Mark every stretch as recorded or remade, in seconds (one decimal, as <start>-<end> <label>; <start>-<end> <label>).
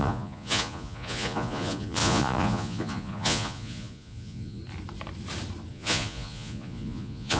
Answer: 0.0-4.6 remade; 4.6-5.7 recorded; 5.7-7.4 remade